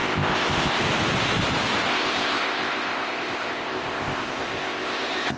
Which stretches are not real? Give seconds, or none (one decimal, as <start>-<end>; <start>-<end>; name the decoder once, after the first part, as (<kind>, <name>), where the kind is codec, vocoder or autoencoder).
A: 0.0-0.8 (codec, ZipCodec); 1.9-5.4